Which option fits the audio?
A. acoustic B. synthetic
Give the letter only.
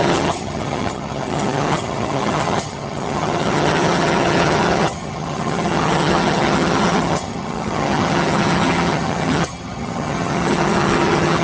B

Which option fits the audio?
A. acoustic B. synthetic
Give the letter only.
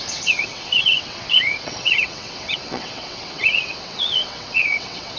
B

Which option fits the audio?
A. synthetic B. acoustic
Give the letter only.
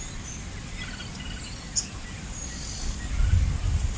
B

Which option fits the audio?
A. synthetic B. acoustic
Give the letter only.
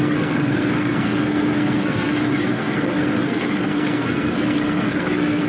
A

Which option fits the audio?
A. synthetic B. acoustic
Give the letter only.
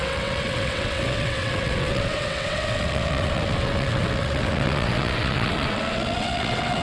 A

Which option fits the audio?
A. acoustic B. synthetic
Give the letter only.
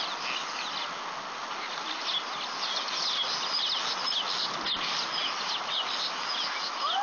A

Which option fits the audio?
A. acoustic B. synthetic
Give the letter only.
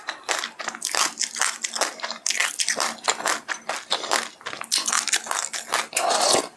A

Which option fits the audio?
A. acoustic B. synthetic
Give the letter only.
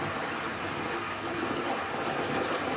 A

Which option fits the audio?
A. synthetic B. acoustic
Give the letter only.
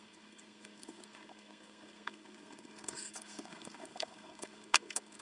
A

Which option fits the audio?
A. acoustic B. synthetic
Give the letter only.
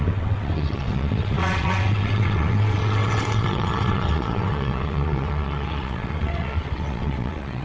B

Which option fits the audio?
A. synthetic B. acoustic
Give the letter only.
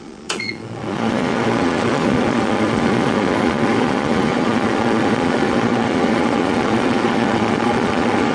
A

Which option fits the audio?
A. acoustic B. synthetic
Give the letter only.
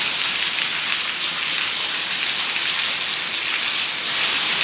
A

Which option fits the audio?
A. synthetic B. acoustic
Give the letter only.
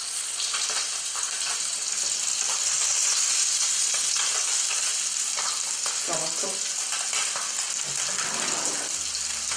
B